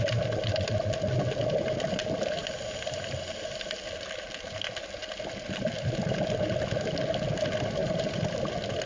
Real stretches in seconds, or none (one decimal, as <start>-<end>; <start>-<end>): 0.0-7.8; 8.4-8.9